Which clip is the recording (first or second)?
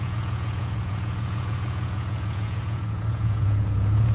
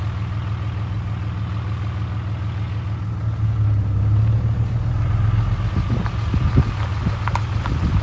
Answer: second